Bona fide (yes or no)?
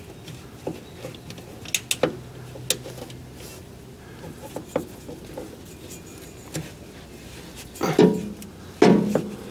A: yes